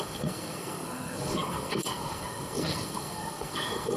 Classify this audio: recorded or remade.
remade